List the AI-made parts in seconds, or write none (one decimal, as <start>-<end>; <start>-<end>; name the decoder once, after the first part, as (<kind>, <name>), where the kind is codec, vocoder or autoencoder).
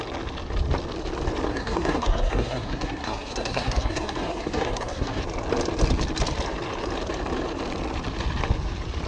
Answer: 1.5-5.2 (codec, SNAC)